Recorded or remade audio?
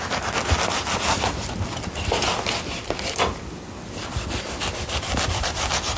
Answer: recorded